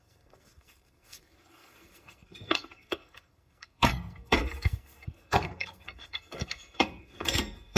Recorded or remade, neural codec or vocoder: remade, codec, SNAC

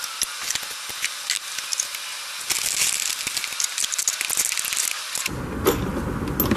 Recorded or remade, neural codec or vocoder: recorded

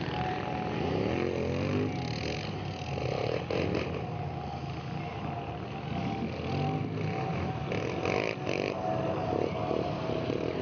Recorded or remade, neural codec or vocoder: recorded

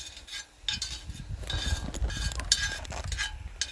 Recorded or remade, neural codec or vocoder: recorded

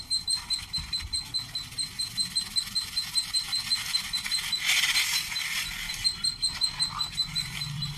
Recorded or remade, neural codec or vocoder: recorded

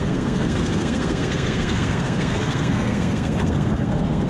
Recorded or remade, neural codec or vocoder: remade, codec, SNAC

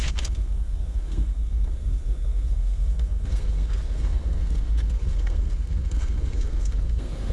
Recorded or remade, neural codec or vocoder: remade, codec, SNAC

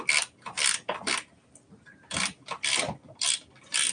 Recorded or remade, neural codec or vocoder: recorded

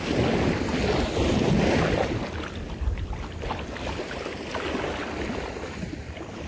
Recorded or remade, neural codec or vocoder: recorded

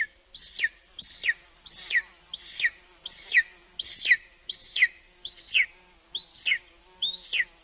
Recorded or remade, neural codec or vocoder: recorded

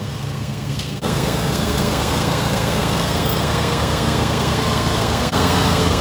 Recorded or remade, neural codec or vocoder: remade, codec, SNAC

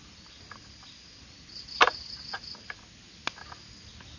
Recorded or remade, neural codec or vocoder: recorded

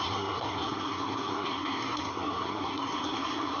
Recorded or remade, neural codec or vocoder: remade, codec, SNAC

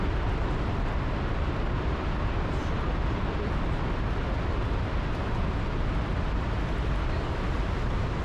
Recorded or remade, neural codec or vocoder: recorded